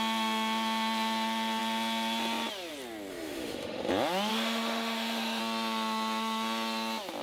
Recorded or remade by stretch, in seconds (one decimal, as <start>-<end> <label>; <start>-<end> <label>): 0.0-3.1 recorded; 3.1-3.9 remade; 3.9-4.3 recorded; 4.3-5.4 remade; 5.4-7.2 recorded